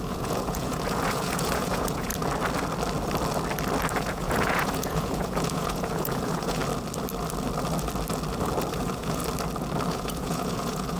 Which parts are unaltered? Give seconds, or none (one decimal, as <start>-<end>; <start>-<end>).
2.1-3.9; 6.6-8.7; 9.2-9.9